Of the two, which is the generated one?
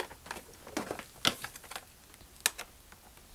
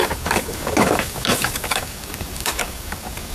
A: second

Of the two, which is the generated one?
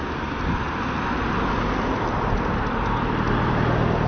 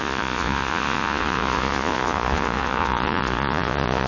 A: second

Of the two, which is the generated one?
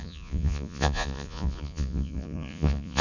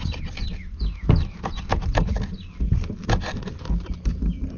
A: first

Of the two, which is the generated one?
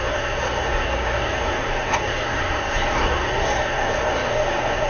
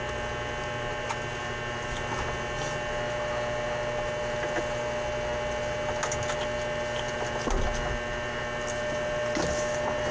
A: first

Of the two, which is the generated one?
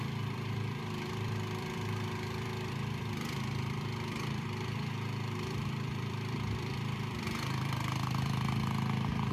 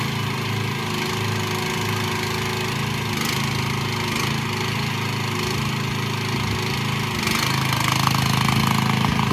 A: first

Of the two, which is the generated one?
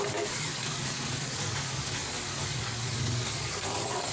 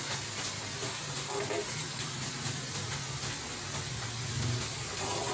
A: first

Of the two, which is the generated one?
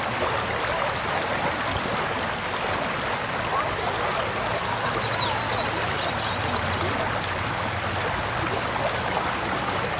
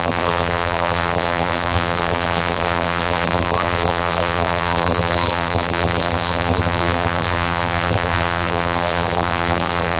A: second